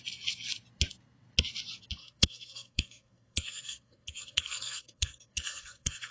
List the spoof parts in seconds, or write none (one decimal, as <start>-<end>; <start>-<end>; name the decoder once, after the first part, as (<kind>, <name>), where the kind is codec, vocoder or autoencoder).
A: 2.0-6.1 (codec, SNAC)